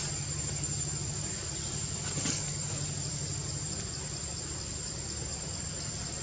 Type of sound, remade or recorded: recorded